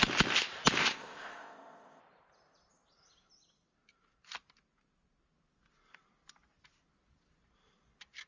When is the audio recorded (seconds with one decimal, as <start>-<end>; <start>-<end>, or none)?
0.0-0.8; 2.0-8.3